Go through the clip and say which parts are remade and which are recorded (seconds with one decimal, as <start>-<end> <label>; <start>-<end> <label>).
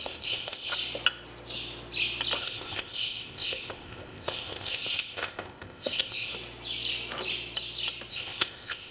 0.0-0.7 remade; 0.7-2.4 recorded; 2.4-6.3 remade; 6.3-8.1 recorded; 8.1-8.9 remade